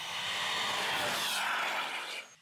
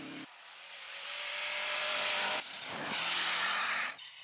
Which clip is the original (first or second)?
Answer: first